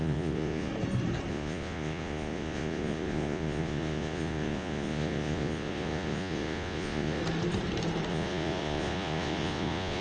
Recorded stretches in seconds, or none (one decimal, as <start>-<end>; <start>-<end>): 0.7-1.3; 7.2-8.1